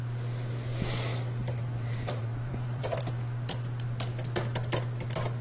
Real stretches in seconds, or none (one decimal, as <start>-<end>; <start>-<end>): 0.0-1.4; 3.0-5.4